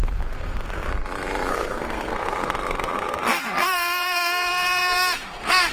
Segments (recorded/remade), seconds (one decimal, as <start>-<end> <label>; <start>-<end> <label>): 0.0-0.9 remade; 0.9-1.5 recorded; 1.5-5.7 remade